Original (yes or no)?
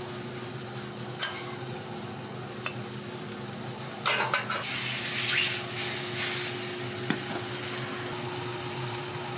yes